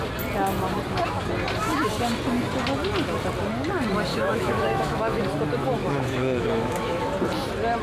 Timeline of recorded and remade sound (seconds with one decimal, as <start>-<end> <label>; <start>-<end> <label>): 0.0-4.1 recorded; 4.1-5.2 remade; 5.2-5.8 recorded; 5.8-7.0 remade; 7.0-7.8 recorded